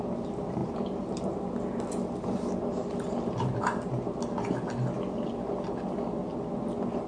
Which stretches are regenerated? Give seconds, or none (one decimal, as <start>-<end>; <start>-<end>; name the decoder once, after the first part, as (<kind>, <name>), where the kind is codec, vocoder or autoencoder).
none